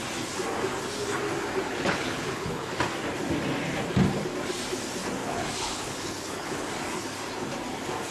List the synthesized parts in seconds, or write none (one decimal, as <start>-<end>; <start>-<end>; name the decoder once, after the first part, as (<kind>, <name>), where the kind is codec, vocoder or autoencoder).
1.7-2.7 (codec, HILCodec); 5.2-6.7